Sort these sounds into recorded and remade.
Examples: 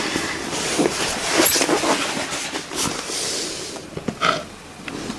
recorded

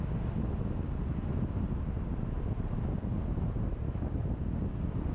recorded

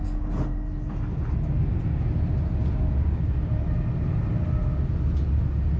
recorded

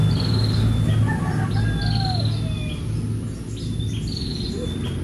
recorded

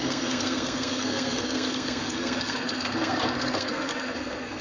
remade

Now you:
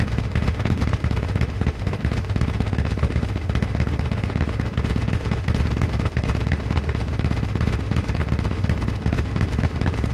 remade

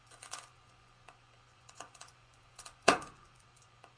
remade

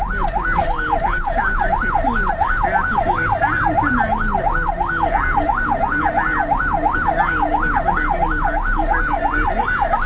recorded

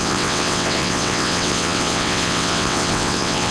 remade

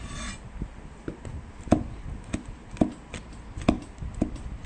recorded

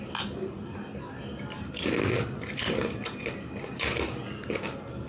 recorded